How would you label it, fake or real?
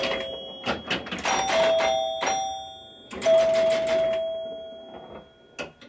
real